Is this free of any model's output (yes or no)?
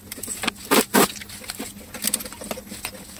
yes